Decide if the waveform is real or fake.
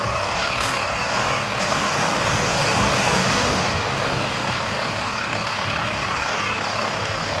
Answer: fake